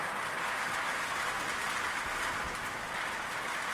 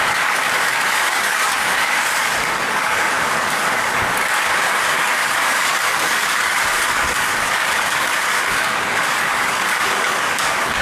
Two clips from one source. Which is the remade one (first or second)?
second